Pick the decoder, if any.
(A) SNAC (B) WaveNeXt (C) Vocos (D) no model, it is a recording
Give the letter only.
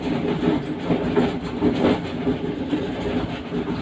D